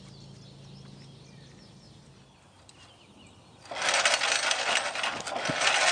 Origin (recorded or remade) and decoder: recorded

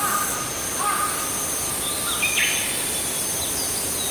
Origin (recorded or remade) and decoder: recorded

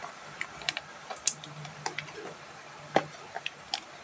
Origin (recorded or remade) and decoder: recorded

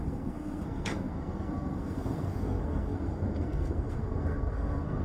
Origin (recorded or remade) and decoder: remade, codec, SNAC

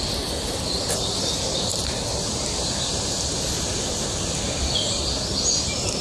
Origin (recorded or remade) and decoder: recorded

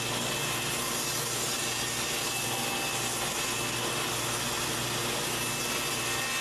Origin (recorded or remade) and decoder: recorded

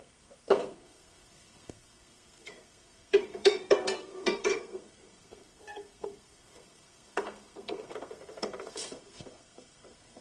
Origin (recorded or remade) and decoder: remade, codec, SNAC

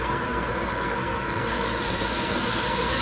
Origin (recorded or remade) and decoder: remade, codec, SNAC